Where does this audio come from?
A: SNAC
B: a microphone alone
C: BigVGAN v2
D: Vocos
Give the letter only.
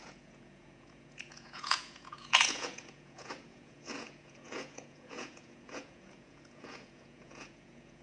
D